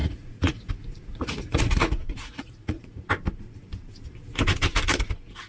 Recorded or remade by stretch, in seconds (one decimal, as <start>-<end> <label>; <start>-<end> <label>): 0.0-0.7 remade; 0.7-1.1 recorded; 1.1-3.0 remade; 3.0-5.5 recorded